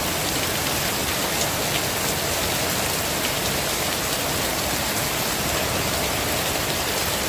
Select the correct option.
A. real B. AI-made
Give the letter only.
A